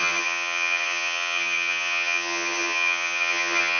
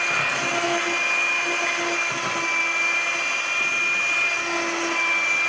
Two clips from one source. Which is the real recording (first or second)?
second